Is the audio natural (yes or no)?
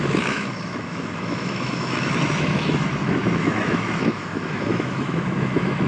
no